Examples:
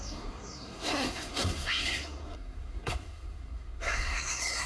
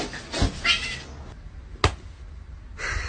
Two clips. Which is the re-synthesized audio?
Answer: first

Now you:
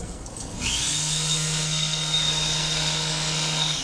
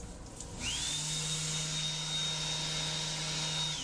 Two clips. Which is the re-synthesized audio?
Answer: first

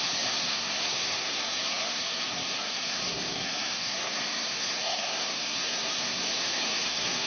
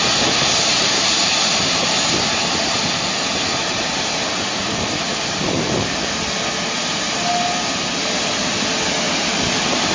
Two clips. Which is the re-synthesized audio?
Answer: first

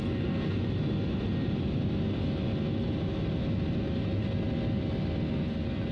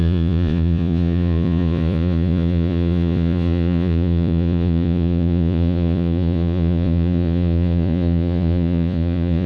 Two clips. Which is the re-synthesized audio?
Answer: second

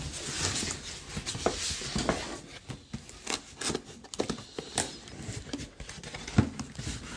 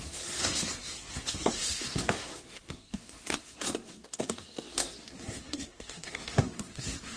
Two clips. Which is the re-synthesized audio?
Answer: second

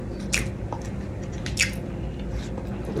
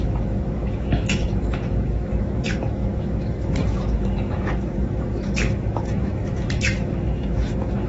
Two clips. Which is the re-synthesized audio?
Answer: second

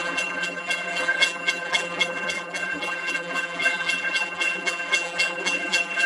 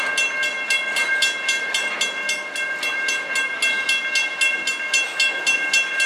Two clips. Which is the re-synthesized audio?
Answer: first